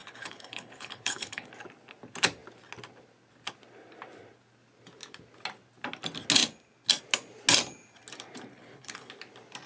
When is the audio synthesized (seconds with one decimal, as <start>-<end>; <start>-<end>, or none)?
0.0-1.5; 8.5-9.1